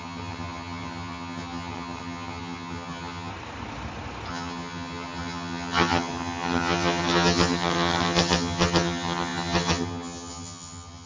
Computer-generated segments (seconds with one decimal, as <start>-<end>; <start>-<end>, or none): 0.0-3.3; 4.3-11.1